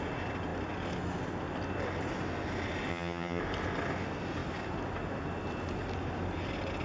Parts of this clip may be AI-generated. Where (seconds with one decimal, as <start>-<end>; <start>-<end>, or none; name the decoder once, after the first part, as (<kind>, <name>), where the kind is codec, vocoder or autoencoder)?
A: 2.9-3.4 (vocoder, HiFi-GAN)